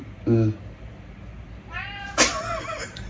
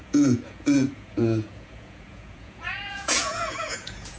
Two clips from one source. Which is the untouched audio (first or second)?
first